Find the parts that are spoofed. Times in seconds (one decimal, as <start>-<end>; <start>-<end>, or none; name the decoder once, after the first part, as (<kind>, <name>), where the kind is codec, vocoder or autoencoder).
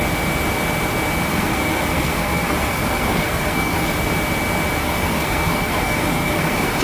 1.3-4.1 (codec, SNAC); 4.8-6.8